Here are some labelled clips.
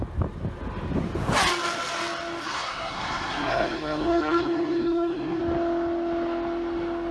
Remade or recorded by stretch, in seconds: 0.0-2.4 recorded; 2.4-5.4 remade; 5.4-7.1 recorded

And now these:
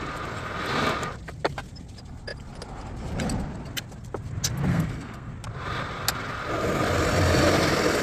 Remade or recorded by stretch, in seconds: 0.0-4.7 recorded; 4.7-5.3 remade; 5.3-8.0 recorded

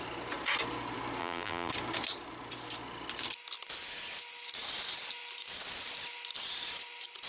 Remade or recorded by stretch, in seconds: 0.0-1.2 recorded; 1.2-1.7 remade; 1.7-7.3 recorded

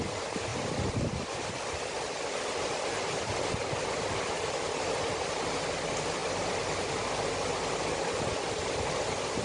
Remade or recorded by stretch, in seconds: 0.0-0.5 recorded; 0.5-2.2 remade; 2.2-6.2 recorded; 6.2-7.3 remade; 7.3-9.4 recorded

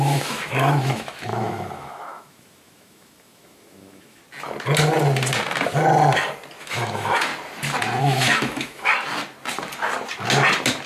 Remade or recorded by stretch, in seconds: 0.0-4.2 remade; 4.2-6.6 recorded; 6.6-7.3 remade; 7.3-8.0 recorded; 8.0-8.9 remade; 8.9-10.9 recorded

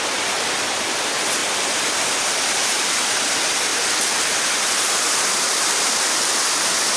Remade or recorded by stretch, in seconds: 0.0-1.4 recorded; 1.4-3.3 remade; 3.3-3.7 recorded; 3.7-7.0 remade